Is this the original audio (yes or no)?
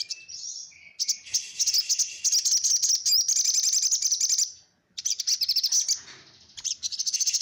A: yes